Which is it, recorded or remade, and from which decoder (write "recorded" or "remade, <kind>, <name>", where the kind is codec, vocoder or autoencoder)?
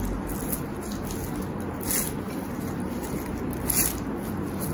recorded